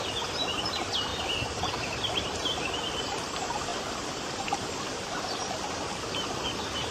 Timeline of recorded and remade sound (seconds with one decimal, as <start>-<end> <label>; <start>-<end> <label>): 0.0-1.1 recorded; 1.1-1.7 remade; 1.7-3.7 recorded; 3.7-4.8 remade; 4.8-6.9 recorded